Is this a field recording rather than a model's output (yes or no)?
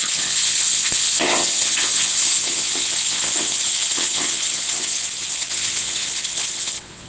no